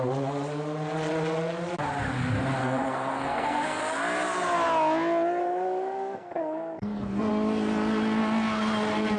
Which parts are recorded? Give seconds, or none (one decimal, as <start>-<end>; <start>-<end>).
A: 0.0-2.6; 3.8-5.4; 7.3-9.2